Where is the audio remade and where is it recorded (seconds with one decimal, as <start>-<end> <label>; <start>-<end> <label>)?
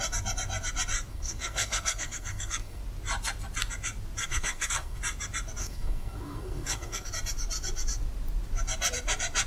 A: 0.0-1.1 recorded; 1.1-2.8 remade; 2.8-4.2 recorded; 4.2-5.0 remade; 5.0-5.6 recorded; 5.6-7.1 remade; 7.1-9.5 recorded